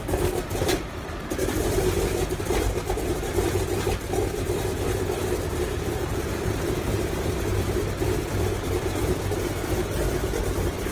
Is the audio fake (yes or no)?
yes